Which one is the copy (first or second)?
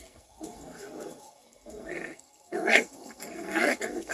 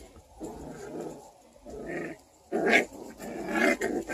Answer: first